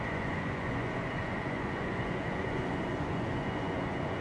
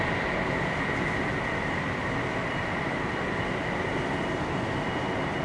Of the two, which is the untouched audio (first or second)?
second